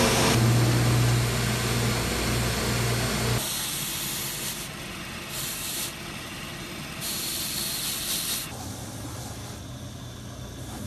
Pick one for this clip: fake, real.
real